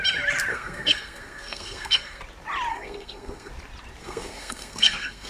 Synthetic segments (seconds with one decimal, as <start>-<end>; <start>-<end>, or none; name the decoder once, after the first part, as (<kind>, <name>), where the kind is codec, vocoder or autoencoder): 0.5-2.2 (codec, SNAC); 2.7-3.5; 4.0-5.3